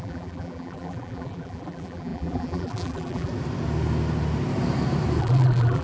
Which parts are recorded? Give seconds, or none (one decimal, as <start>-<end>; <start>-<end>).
3.3-5.2